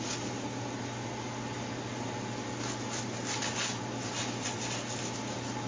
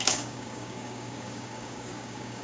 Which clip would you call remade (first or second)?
second